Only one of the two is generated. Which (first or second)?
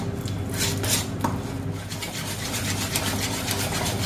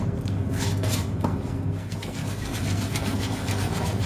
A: second